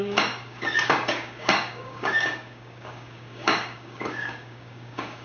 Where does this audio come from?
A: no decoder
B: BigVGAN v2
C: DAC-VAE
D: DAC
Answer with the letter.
D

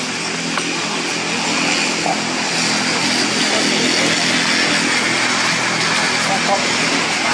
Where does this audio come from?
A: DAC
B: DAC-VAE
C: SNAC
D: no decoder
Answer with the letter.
D